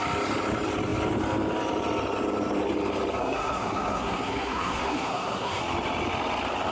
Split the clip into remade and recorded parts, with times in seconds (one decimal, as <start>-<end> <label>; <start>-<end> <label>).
0.0-3.2 recorded; 3.2-5.6 remade; 5.6-6.7 recorded

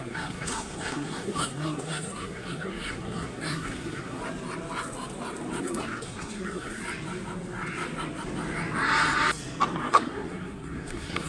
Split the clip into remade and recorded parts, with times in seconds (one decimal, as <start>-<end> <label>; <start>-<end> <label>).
0.0-4.2 remade; 4.2-5.6 recorded; 5.6-6.8 remade; 6.8-9.9 recorded; 9.9-11.3 remade

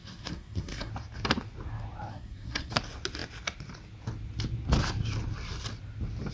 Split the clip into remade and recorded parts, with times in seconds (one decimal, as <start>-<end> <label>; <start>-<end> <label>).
0.0-0.9 remade; 0.9-2.1 recorded; 2.1-2.7 remade; 2.7-6.3 recorded

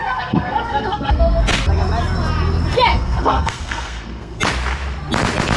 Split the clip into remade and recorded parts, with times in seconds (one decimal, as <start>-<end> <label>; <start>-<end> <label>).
0.0-1.2 remade; 1.2-2.9 recorded; 2.9-4.4 remade; 4.4-5.6 recorded

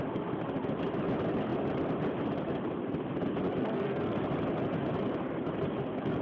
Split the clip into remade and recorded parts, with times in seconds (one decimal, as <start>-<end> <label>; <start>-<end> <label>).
0.0-3.6 recorded; 3.6-4.2 remade; 4.2-6.2 recorded

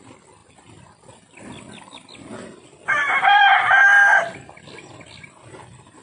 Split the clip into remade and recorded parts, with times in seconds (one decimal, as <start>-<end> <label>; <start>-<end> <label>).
0.0-6.0 recorded

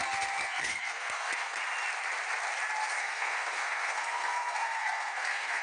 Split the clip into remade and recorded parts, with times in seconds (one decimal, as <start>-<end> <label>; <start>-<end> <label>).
0.0-1.6 remade; 1.6-3.0 recorded; 3.0-5.6 remade